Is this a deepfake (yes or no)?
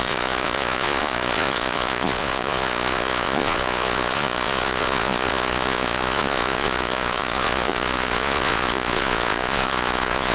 yes